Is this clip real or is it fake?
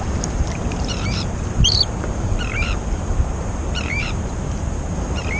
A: fake